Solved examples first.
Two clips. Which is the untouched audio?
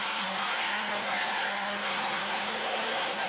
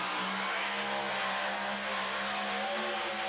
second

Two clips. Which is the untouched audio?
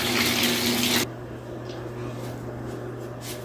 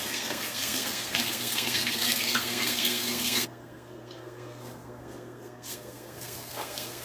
first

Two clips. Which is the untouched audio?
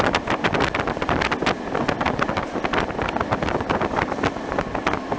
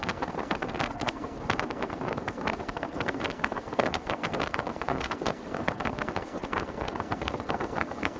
first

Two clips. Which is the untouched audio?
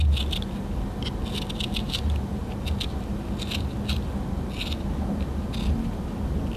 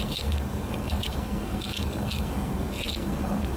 first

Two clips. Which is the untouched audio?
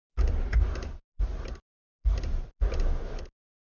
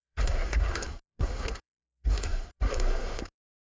first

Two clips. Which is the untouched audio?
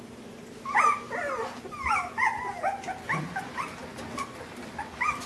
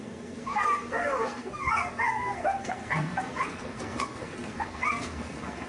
first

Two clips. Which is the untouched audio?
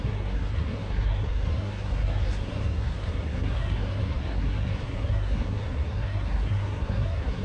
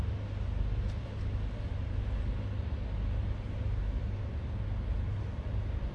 second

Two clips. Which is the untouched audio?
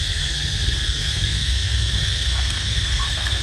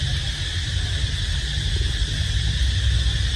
second